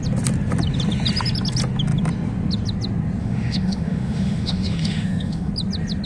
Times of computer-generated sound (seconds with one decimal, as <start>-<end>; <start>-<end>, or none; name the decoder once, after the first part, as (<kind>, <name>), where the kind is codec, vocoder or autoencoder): 3.2-5.5 (autoencoder, DAC-VAE)